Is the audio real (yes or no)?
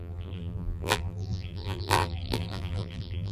no